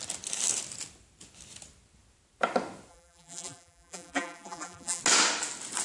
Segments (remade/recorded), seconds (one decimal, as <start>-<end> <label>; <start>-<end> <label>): 0.0-2.9 recorded; 2.9-5.0 remade; 5.0-5.8 recorded